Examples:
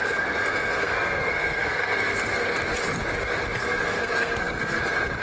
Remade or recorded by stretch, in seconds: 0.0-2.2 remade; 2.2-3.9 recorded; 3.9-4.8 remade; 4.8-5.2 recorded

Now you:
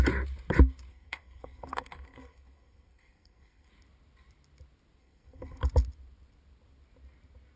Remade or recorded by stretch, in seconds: 0.0-0.9 recorded; 0.9-3.7 remade; 3.7-5.0 recorded; 5.0-5.6 remade; 5.6-7.6 recorded